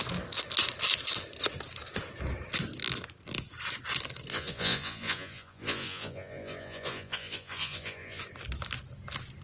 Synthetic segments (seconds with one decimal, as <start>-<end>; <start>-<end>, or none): 4.3-8.2